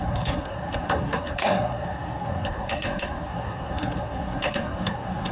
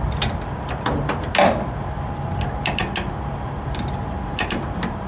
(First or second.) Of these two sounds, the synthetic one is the first